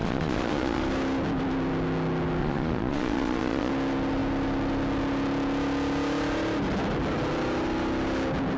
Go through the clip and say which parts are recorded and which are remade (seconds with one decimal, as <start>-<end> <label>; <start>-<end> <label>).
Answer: 0.0-0.8 remade; 0.8-2.4 recorded; 2.4-3.7 remade; 3.7-8.6 recorded